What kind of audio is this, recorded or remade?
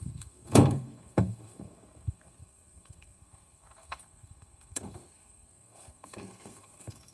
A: remade